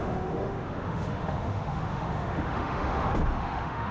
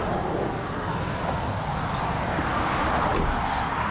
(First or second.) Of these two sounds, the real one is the second